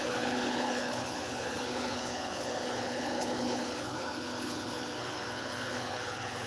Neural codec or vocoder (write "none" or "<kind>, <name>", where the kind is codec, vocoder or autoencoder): codec, HILCodec